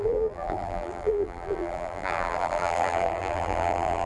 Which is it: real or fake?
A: fake